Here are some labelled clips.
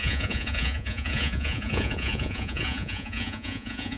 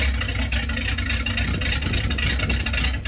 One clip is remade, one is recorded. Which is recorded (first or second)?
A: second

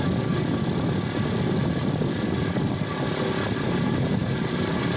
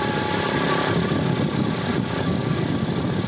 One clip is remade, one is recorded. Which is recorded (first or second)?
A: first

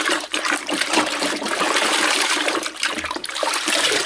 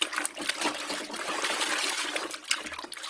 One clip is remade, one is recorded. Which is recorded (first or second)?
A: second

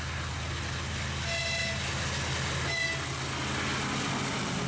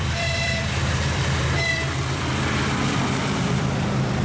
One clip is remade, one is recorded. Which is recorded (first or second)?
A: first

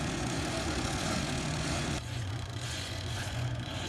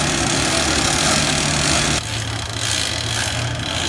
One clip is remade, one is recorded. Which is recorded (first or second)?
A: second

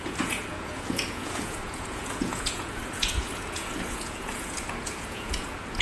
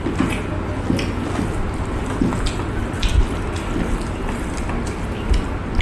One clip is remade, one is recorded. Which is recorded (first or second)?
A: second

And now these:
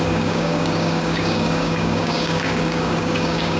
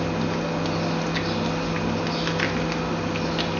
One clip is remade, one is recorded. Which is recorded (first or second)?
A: second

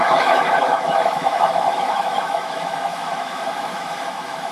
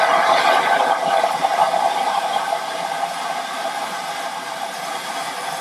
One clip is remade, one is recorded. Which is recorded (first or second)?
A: second